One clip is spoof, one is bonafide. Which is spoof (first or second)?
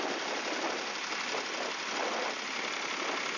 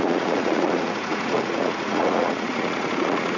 second